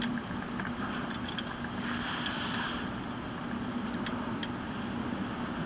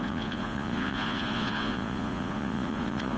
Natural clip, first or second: first